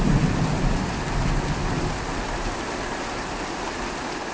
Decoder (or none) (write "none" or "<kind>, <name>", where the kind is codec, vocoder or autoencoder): none